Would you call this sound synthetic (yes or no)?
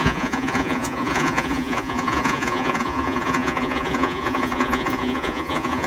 yes